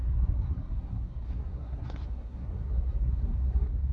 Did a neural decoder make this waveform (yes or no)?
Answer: yes